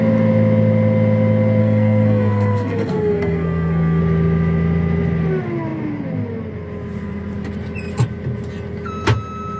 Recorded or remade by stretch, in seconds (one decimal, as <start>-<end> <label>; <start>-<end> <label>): 0.0-1.6 recorded; 1.6-4.0 remade; 4.0-9.6 recorded